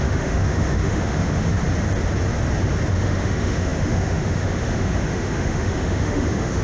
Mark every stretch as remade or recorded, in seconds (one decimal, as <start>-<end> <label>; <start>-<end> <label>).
0.0-1.6 remade; 1.6-2.9 recorded; 2.9-6.6 remade